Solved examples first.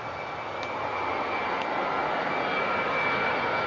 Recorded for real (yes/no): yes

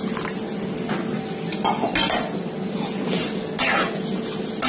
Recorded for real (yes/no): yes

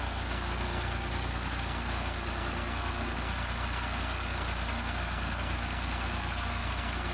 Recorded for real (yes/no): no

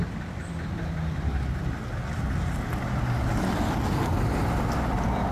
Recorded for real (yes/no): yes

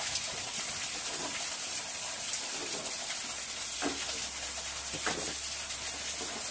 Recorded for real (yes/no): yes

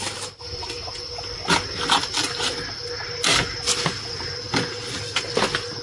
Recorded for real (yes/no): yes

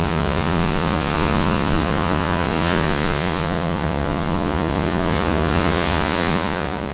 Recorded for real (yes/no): no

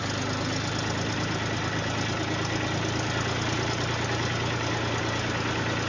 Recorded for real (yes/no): yes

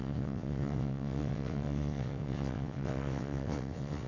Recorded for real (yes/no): no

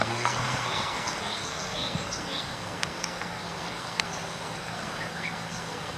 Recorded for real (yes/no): no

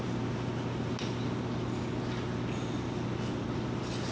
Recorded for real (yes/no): yes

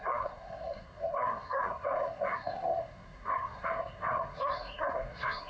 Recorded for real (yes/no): no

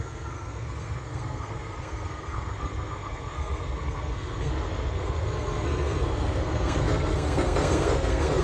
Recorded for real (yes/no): no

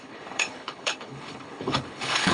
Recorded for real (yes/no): no